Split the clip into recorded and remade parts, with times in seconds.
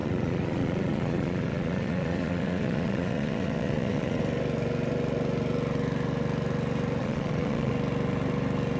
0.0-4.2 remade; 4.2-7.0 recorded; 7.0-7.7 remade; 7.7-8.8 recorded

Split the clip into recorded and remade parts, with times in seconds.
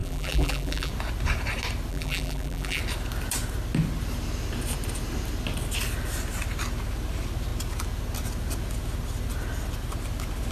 0.0-0.9 remade; 0.9-1.9 recorded; 1.9-2.8 remade; 2.8-10.5 recorded